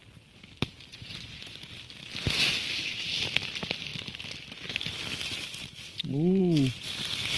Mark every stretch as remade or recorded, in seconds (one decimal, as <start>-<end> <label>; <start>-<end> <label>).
0.0-0.9 recorded; 0.9-1.6 remade; 1.6-7.4 recorded

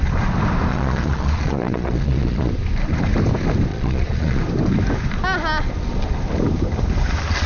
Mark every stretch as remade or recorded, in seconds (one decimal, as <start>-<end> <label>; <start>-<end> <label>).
0.0-0.7 recorded; 0.7-2.5 remade; 2.5-3.7 recorded; 3.7-4.4 remade; 4.4-7.5 recorded

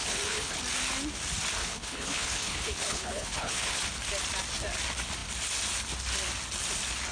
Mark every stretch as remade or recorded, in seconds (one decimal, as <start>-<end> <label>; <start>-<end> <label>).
0.0-0.6 remade; 0.6-1.6 recorded; 1.6-3.8 remade; 3.8-7.1 recorded

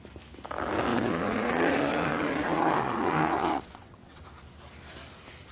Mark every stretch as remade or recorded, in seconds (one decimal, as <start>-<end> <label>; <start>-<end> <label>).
0.0-0.9 recorded; 0.9-4.2 remade; 4.2-5.5 recorded

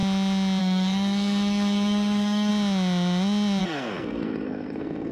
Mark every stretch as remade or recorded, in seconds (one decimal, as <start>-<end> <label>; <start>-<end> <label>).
0.0-0.6 recorded; 0.6-2.5 remade; 2.5-3.6 recorded; 3.6-5.1 remade

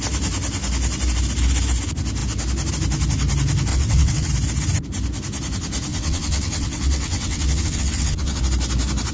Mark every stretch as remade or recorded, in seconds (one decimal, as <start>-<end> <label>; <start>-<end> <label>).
0.0-3.7 recorded; 3.7-4.3 remade; 4.3-5.9 recorded; 5.9-8.4 remade; 8.4-9.1 recorded

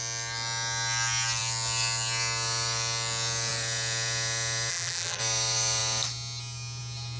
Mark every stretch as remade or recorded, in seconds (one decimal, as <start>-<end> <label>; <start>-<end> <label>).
0.0-4.7 recorded; 4.7-5.2 remade; 5.2-7.2 recorded